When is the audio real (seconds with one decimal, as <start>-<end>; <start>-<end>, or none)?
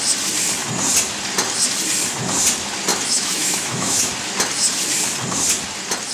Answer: 0.0-2.9; 4.1-6.1